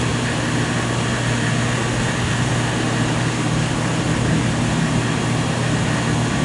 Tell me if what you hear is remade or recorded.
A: recorded